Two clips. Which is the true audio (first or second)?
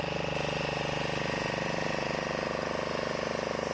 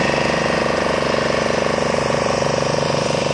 first